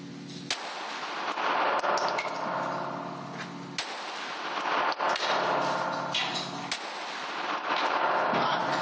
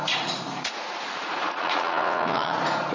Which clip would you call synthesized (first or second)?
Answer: second